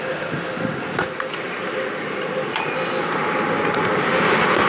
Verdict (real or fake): real